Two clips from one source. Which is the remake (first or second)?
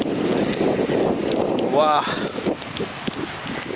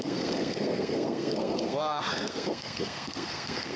second